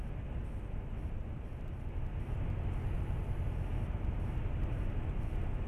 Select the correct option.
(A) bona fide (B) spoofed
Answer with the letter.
A